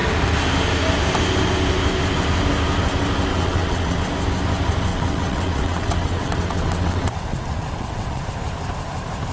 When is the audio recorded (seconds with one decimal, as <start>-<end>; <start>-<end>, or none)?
0.0-3.3; 4.0-4.9; 8.2-9.3